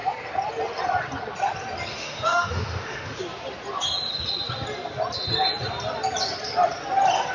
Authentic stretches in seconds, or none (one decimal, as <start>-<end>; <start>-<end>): 0.0-1.9; 3.2-7.3